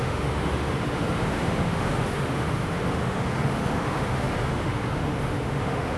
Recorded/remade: remade